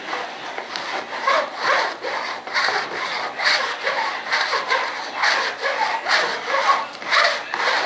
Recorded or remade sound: recorded